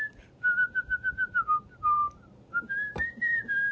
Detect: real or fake fake